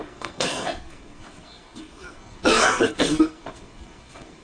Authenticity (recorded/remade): remade